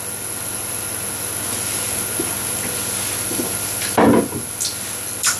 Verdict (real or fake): real